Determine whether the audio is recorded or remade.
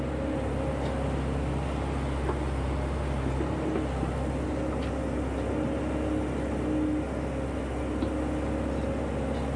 recorded